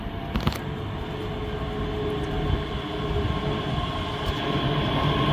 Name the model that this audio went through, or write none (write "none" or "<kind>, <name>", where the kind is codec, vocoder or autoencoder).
none